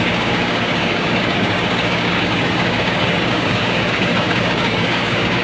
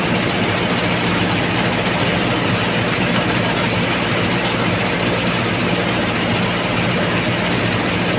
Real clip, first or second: second